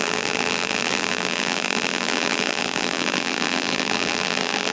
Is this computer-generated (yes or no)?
yes